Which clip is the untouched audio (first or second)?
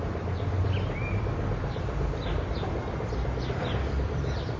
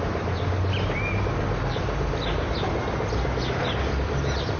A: second